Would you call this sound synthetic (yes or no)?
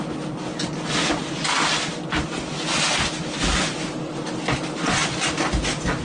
no